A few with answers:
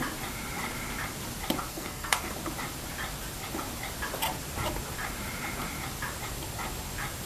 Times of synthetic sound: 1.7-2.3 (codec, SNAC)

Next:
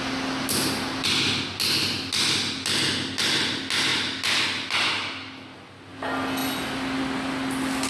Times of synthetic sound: none

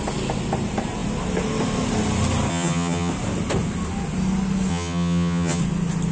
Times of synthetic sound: 2.5-3.1 (vocoder, HiFi-GAN); 4.7-5.6

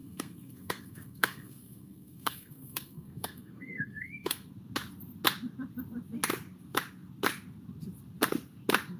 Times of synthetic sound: 0.0-4.5 (codec, SNAC)

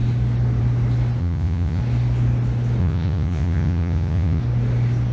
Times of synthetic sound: 1.2-1.8 (vocoder, Vocos); 2.8-4.4